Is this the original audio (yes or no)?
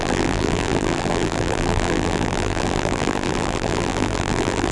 no